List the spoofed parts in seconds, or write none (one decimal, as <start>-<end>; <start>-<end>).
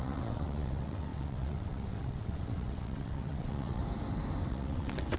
0.0-3.8; 4.5-5.2